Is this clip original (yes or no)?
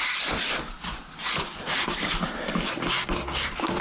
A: yes